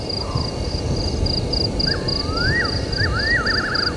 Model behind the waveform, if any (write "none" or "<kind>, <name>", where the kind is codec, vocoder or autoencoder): none